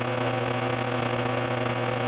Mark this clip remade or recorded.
recorded